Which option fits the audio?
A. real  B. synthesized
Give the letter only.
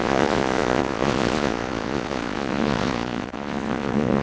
B